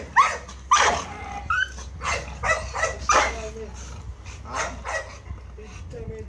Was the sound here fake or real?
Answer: real